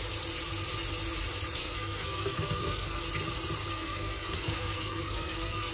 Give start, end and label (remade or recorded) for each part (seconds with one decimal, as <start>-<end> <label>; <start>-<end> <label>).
0.0-1.6 recorded; 1.6-3.0 remade; 3.0-3.7 recorded; 3.7-5.7 remade

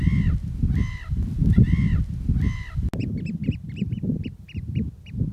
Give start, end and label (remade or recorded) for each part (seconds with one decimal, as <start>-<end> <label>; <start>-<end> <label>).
0.0-5.3 recorded

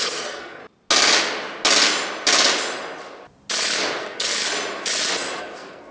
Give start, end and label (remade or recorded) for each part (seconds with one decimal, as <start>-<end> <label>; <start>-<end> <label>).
0.0-0.6 remade; 0.6-4.0 recorded; 4.0-4.4 remade; 4.4-5.4 recorded; 5.4-5.9 remade

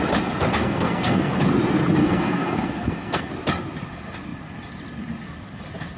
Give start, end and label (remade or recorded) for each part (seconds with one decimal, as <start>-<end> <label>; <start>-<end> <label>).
0.0-0.5 recorded; 0.5-1.4 remade; 1.4-2.0 recorded; 2.0-3.3 remade; 3.3-6.0 recorded

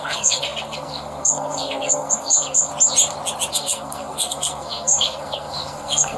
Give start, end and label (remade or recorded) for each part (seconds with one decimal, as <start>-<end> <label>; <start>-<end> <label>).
0.0-2.7 remade; 2.7-3.5 recorded; 3.5-6.2 remade

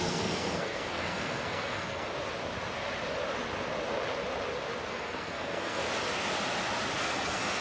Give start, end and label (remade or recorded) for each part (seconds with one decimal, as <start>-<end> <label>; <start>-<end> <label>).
0.0-2.1 remade; 2.1-4.9 recorded; 4.9-5.8 remade; 5.8-7.0 recorded; 7.0-7.6 remade

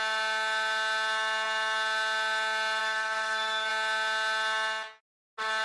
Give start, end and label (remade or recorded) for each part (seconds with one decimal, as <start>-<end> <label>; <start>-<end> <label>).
0.0-2.8 recorded; 2.8-3.7 remade; 3.7-5.6 recorded